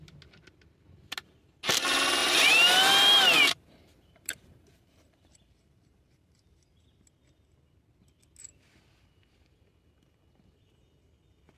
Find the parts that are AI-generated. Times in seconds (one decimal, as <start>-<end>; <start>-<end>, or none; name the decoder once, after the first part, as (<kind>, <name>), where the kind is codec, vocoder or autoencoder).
2.2-7.0 (vocoder, BigVGAN v2)